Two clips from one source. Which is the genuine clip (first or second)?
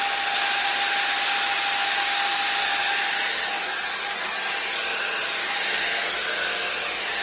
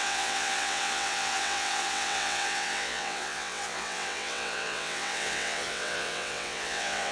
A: first